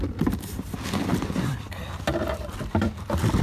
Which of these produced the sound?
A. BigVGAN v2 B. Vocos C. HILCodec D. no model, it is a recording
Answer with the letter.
A